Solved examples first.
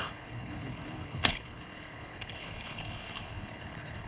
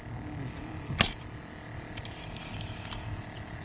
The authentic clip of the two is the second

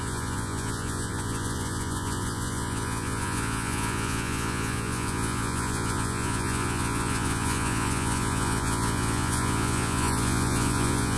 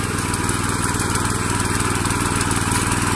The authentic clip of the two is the second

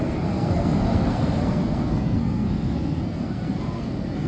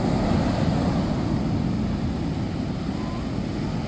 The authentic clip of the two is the second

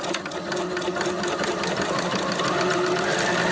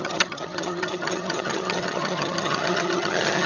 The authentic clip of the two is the first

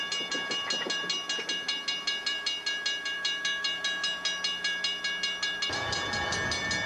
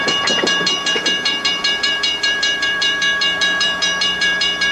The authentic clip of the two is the first